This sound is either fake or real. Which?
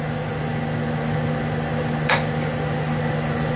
real